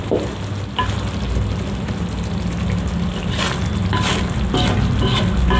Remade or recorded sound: recorded